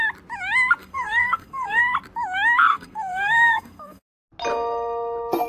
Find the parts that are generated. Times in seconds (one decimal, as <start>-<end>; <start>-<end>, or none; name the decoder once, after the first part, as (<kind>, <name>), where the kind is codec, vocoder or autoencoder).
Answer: 0.8-1.8 (codec, SNAC); 2.7-4.0